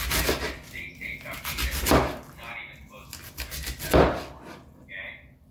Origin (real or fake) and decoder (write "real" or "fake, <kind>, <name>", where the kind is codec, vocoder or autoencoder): real